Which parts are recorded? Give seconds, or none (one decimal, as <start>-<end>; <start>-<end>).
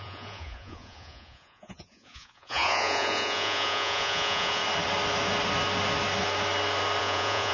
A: 4.6-7.0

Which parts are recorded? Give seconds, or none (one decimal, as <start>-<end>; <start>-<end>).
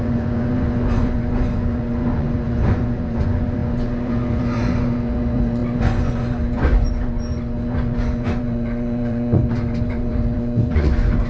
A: none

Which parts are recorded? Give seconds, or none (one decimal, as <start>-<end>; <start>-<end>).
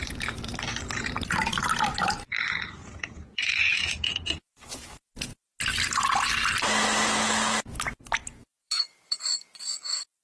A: 0.0-2.8; 4.9-8.6; 9.2-10.2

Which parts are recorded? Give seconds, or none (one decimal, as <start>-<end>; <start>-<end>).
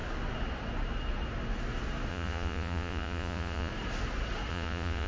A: 0.0-2.1; 3.7-4.5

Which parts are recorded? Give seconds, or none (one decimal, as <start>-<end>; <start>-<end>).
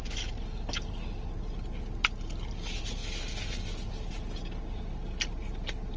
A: 0.0-6.0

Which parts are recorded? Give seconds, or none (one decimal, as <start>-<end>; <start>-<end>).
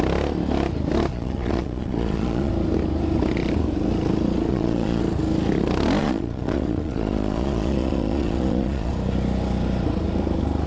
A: 0.0-1.1; 2.5-4.5; 5.0-6.0; 8.9-10.7